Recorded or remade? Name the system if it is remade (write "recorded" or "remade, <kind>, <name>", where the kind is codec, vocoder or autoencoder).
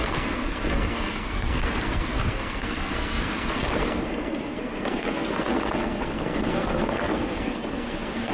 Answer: remade, codec, SNAC